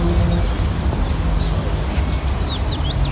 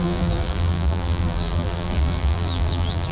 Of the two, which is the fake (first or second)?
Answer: second